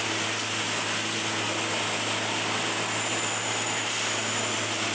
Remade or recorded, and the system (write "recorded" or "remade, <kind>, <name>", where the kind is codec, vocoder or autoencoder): recorded